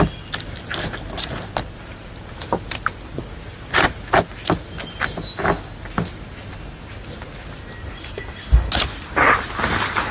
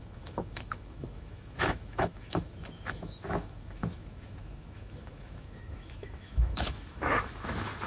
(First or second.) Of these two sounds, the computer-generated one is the second